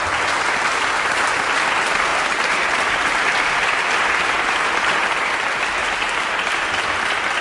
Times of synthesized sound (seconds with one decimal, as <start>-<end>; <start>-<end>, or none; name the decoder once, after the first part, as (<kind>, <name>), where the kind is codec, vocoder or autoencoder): 2.1-2.9 (vocoder, BigVGAN v2); 5.8-6.7